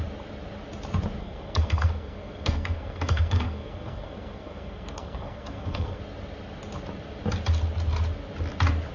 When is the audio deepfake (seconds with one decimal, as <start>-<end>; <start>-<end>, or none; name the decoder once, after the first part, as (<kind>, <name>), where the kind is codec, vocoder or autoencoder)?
1.2-6.0 (codec, SNAC)